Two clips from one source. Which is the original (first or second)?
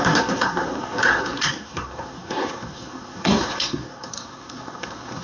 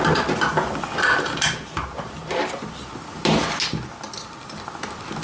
second